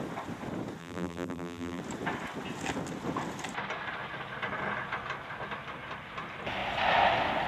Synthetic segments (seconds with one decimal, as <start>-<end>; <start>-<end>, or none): 0.8-1.8